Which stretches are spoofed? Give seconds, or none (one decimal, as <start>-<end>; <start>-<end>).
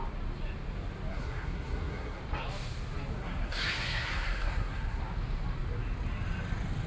1.1-2.2; 3.2-5.0